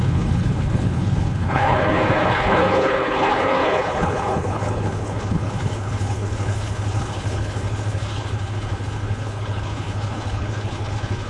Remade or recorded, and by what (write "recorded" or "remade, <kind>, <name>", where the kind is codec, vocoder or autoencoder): remade, codec, HILCodec